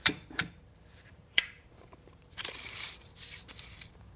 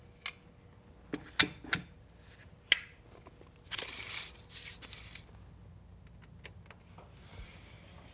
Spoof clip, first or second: first